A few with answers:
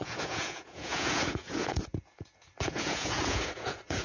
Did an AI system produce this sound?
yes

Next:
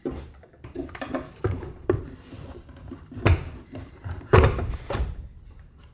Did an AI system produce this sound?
yes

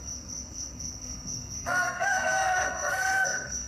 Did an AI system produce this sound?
yes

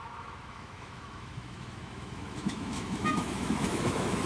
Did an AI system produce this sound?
yes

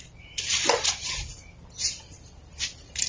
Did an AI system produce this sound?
no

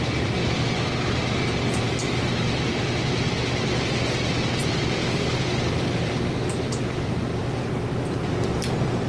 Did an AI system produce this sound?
no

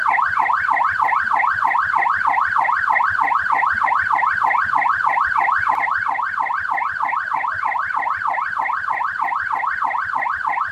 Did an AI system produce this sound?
no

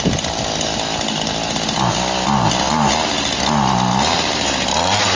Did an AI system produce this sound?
no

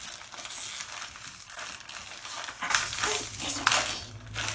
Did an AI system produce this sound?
no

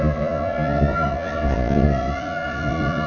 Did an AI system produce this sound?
yes